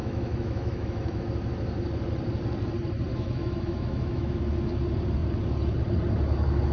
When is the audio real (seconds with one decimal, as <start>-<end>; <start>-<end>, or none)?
1.2-3.1; 4.4-6.7